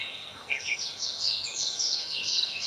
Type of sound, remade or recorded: remade